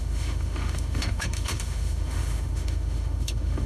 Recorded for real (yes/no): no